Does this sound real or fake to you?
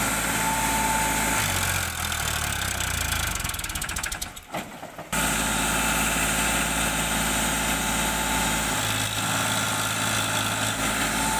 real